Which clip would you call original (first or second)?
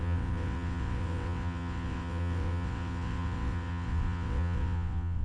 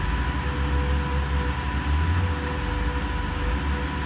second